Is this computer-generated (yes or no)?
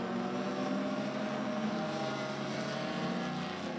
no